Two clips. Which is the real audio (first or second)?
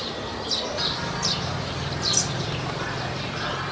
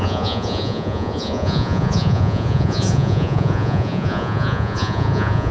first